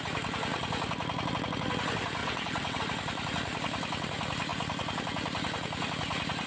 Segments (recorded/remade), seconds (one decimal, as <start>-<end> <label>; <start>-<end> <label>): 0.0-2.2 recorded; 2.2-2.8 remade; 2.8-6.5 recorded